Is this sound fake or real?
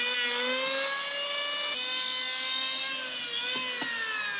real